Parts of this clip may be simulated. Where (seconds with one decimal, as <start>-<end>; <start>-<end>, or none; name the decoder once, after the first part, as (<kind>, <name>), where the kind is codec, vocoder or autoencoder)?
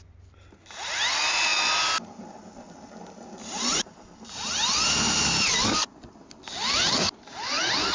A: none